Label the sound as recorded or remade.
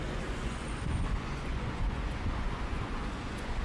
remade